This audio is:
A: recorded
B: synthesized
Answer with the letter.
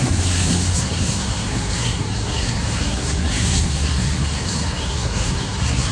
B